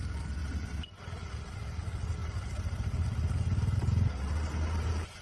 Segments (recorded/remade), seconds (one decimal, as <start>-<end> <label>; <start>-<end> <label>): 0.0-5.2 recorded